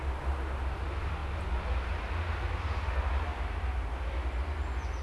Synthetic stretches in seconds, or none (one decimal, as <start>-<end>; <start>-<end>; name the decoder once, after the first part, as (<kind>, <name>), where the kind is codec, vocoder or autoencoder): none